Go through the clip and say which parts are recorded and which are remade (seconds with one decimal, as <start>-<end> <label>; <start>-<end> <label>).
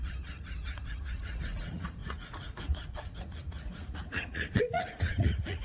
0.0-5.6 remade